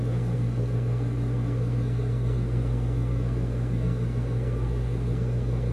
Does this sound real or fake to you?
fake